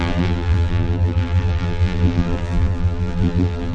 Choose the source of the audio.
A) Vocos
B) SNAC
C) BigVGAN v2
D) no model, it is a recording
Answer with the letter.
C